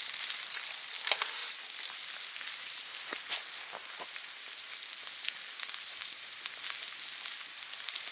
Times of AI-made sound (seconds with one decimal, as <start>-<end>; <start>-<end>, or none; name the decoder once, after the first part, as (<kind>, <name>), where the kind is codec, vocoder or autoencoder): none